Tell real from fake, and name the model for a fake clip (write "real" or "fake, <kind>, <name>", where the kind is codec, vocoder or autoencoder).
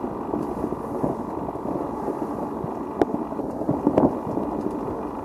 real